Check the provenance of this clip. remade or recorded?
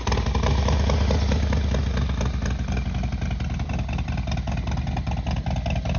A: recorded